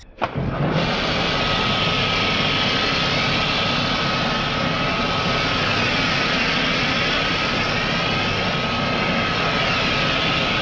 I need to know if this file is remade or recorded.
recorded